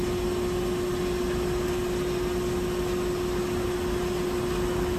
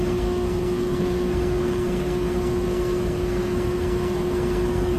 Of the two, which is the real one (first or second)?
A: first